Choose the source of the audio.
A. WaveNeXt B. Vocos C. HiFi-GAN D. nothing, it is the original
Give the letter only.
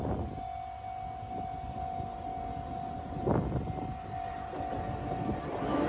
D